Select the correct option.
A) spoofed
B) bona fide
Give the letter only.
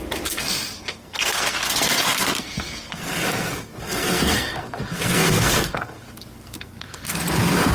A